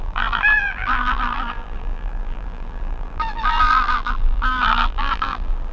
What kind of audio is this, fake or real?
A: fake